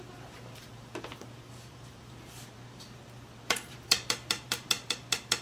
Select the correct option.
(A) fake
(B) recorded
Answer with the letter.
A